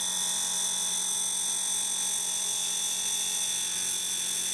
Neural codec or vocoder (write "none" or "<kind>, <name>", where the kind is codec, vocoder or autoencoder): none